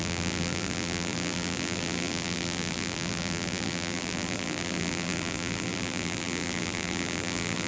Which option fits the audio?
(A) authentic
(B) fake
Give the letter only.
B